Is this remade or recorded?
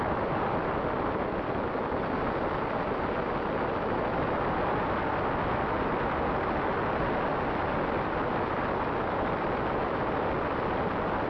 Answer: recorded